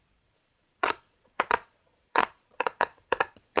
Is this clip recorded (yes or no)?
no